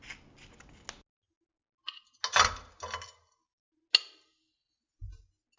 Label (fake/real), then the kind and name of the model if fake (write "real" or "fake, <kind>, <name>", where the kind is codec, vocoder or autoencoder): real